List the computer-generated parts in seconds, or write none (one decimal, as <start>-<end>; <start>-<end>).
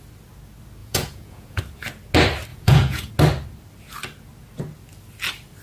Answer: 0.8-1.6; 2.5-3.1